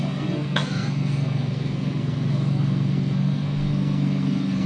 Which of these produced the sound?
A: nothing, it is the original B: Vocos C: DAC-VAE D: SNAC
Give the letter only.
D